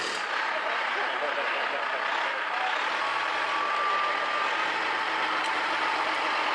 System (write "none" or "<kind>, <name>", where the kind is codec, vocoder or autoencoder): none